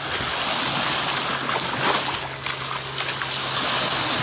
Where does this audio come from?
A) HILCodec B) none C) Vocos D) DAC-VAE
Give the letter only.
B